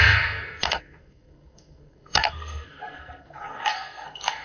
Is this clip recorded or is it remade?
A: remade